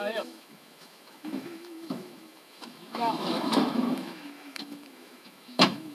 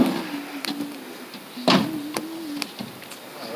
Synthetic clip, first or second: first